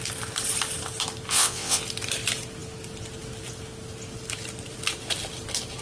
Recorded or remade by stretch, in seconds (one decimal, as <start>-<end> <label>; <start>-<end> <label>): 0.0-1.3 recorded; 1.3-1.8 remade; 1.8-5.8 recorded